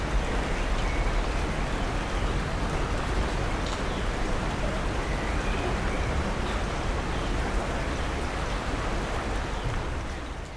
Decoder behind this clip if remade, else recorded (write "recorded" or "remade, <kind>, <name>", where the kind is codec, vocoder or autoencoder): recorded